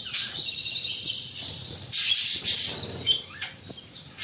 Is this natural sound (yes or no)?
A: no